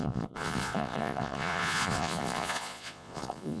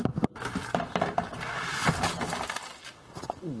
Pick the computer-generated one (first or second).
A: first